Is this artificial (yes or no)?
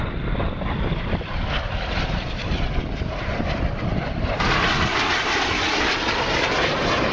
no